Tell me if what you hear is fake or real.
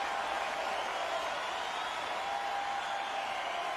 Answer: real